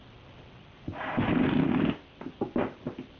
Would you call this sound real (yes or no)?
yes